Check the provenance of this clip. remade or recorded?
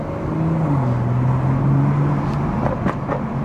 recorded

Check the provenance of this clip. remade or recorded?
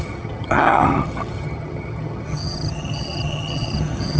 remade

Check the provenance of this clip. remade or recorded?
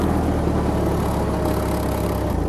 recorded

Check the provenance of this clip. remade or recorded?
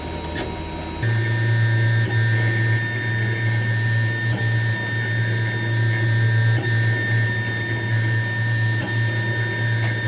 recorded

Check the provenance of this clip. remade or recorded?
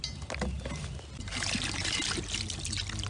recorded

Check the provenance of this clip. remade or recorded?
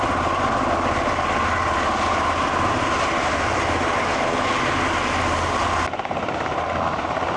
recorded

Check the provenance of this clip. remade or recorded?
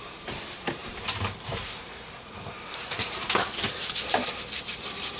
remade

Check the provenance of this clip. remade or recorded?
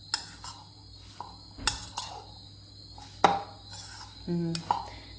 recorded